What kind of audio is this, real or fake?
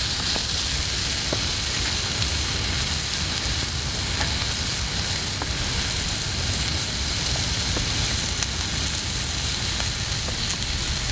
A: real